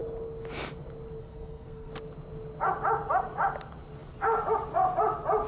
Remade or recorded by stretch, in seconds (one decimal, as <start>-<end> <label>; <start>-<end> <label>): 0.0-1.2 recorded; 1.2-1.9 remade; 1.9-5.5 recorded